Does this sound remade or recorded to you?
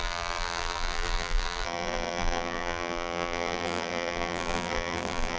remade